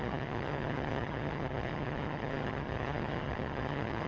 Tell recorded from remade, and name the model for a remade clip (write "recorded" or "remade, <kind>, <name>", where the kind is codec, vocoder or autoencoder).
remade, vocoder, HiFi-GAN